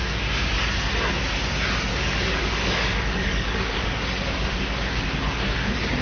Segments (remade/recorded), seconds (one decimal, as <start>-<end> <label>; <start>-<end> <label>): 0.0-1.9 recorded; 1.9-3.8 remade; 3.8-6.0 recorded